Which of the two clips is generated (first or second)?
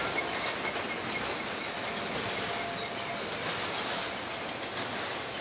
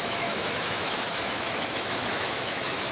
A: second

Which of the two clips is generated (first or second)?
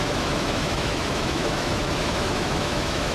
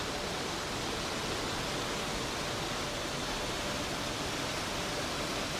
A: first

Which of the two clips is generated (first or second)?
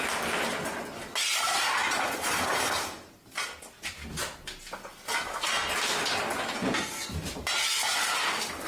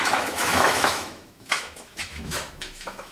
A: second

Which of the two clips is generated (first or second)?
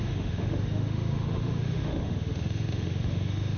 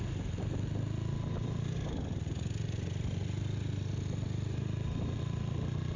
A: first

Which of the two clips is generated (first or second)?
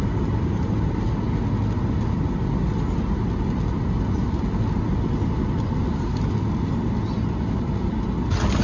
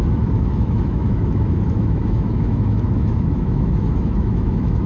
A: second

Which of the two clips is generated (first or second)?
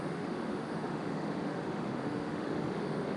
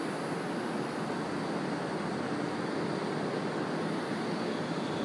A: first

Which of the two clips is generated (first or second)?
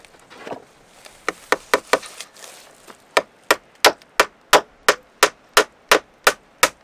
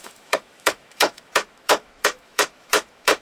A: second